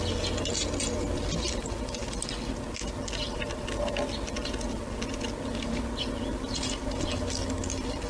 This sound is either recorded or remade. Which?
recorded